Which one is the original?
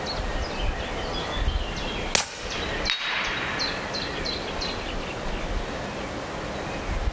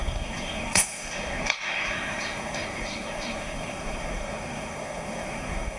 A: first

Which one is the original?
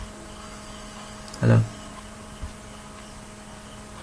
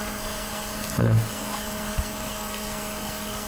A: first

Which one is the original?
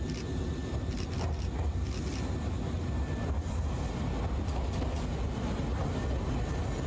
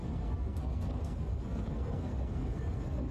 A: first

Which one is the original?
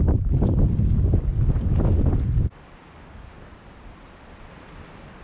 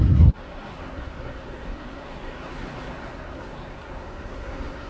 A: first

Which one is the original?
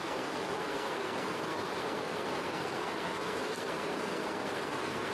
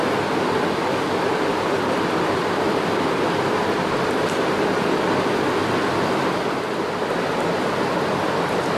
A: second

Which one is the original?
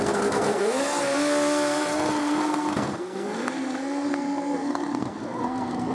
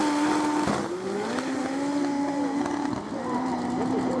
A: second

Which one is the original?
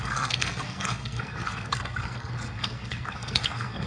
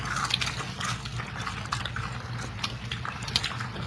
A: second